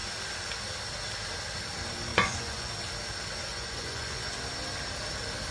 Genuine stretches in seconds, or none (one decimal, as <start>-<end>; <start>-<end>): 0.0-2.1; 2.7-3.5; 4.4-5.5